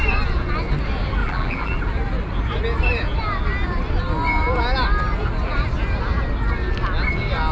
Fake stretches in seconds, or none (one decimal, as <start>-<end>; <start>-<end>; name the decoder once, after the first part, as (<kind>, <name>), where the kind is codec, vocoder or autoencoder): 1.2-1.8 (vocoder, BigVGAN v2)